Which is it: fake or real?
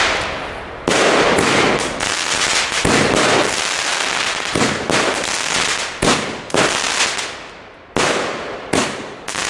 real